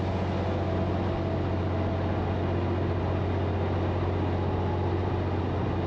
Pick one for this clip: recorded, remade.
recorded